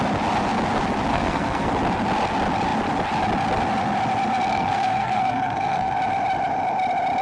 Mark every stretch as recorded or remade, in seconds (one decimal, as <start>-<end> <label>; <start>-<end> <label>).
0.0-1.1 recorded; 1.1-1.7 remade; 1.7-4.5 recorded; 4.5-5.9 remade; 5.9-7.2 recorded